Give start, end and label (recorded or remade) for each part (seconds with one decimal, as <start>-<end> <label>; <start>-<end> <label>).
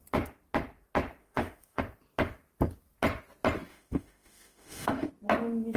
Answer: 0.0-1.2 recorded; 1.2-1.8 remade; 1.8-3.7 recorded; 3.7-5.1 remade; 5.1-5.8 recorded